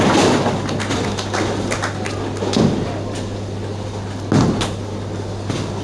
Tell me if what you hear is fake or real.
real